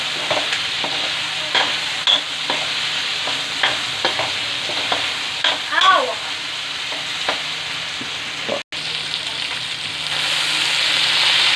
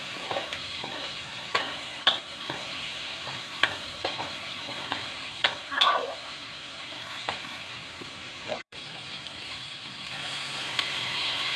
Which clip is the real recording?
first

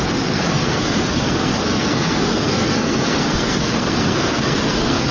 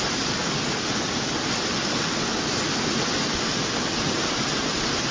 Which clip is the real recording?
second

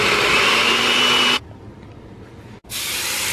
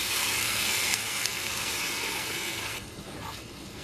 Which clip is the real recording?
first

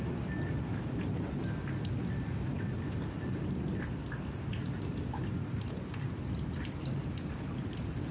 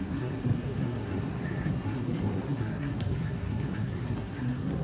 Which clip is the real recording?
first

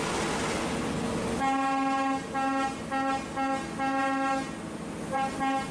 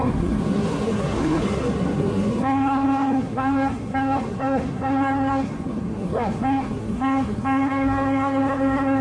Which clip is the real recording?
first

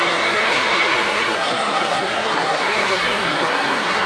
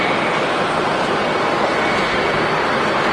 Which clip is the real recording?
second